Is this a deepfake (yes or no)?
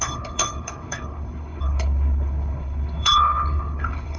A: yes